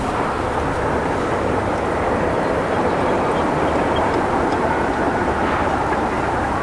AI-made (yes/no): no